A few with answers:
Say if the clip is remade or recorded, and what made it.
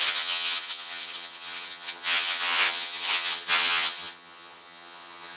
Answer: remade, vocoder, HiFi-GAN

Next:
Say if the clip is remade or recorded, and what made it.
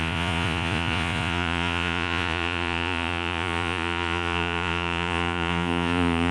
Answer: remade, vocoder, Vocos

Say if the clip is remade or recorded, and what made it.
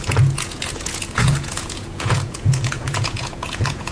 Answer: remade, vocoder, Vocos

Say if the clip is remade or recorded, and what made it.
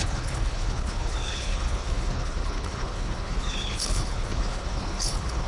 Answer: remade, codec, HILCodec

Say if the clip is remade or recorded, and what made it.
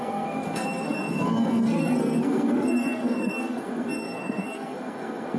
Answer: remade, codec, SNAC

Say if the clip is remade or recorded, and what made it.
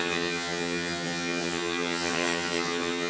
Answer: remade, vocoder, HiFi-GAN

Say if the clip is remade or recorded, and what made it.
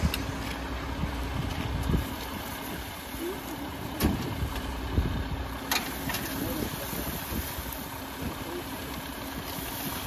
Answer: recorded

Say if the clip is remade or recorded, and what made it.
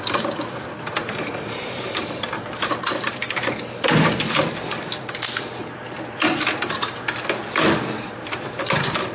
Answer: remade, vocoder, BigVGAN v2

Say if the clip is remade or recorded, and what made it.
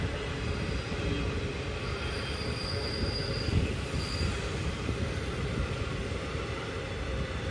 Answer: recorded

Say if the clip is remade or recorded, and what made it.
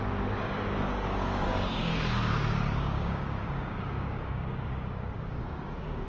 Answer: remade, codec, DAC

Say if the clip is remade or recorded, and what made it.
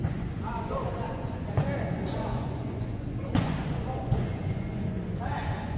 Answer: remade, vocoder, Vocos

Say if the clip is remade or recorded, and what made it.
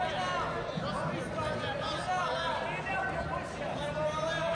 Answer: recorded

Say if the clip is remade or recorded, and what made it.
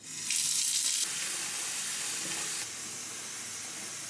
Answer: recorded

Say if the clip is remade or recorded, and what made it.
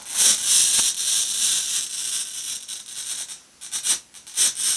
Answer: recorded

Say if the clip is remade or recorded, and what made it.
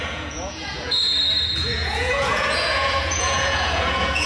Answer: remade, vocoder, Vocos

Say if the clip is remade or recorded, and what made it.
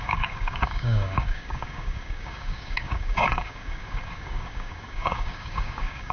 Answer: remade, codec, DAC